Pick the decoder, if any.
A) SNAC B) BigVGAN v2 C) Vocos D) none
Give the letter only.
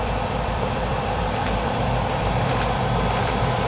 B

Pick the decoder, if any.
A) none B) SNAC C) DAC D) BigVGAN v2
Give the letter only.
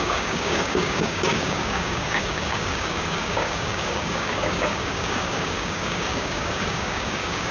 C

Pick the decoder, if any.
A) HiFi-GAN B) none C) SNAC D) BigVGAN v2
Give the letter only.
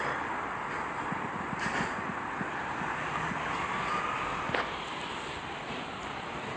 D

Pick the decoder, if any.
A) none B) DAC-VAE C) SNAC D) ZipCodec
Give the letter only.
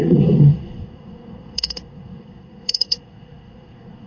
C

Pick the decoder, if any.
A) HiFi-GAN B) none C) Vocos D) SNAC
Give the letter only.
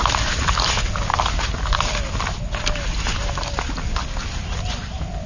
B